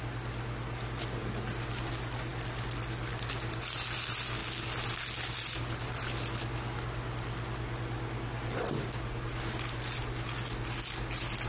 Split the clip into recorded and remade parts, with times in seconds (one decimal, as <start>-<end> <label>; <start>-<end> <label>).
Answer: 0.0-11.5 recorded